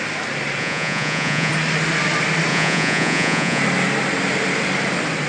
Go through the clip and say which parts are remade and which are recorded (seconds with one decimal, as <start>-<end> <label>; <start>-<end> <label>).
0.0-0.6 recorded; 0.6-1.5 remade; 1.5-2.5 recorded; 2.5-3.6 remade; 3.6-5.3 recorded